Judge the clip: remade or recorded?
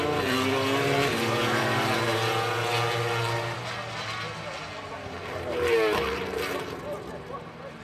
recorded